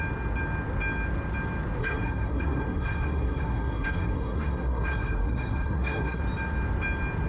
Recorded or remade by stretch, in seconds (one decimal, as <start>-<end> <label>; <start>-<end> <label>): 0.0-1.8 recorded; 1.8-6.2 remade; 6.2-7.3 recorded